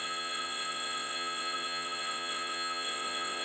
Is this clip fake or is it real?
fake